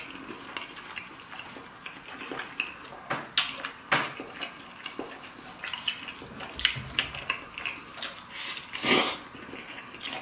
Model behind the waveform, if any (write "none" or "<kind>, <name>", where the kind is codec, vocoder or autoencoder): none